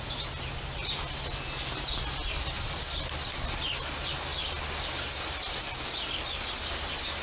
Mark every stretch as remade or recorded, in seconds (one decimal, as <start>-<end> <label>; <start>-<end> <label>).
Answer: 0.0-7.2 recorded